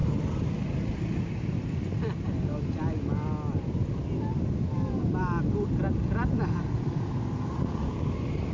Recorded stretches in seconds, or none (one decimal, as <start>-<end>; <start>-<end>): 0.0-8.5